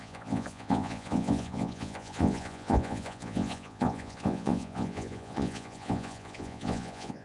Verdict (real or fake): fake